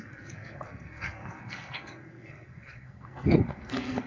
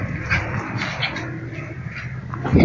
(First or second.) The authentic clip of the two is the second